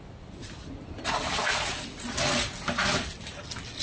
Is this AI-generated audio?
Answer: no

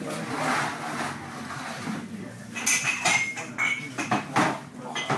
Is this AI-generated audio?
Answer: no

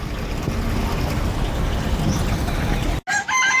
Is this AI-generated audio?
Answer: no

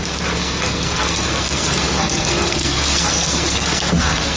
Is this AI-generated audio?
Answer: yes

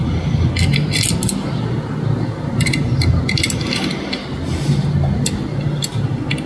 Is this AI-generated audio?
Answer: no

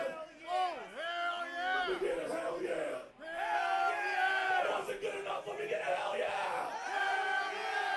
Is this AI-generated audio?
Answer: no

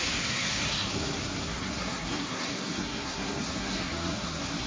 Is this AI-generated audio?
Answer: yes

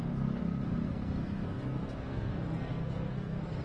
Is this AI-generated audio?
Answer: yes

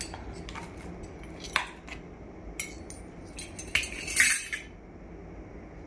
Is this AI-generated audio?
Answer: no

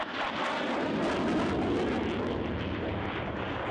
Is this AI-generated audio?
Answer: no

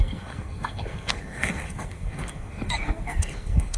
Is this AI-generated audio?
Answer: yes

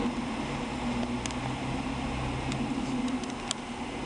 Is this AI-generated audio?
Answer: no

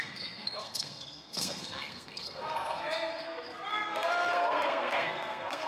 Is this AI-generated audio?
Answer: yes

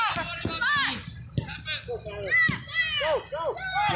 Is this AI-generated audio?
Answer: no